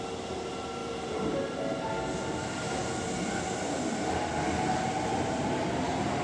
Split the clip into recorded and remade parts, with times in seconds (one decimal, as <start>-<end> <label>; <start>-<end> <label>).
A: 0.0-6.2 recorded